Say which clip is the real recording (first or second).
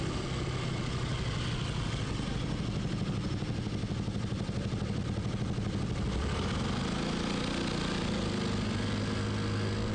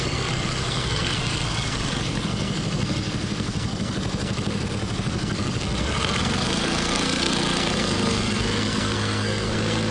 first